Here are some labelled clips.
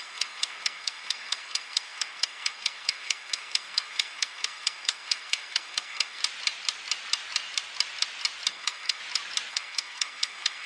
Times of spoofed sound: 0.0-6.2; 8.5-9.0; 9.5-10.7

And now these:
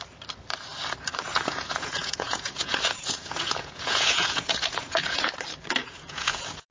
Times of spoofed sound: 1.3-5.3; 5.8-6.7

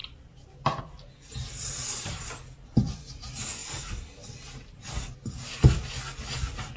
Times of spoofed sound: none